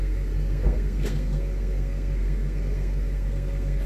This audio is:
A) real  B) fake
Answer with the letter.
B